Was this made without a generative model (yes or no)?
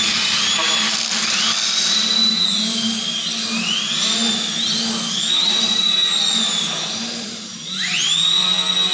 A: yes